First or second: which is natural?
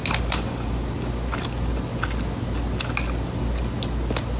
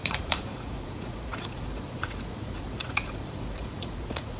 first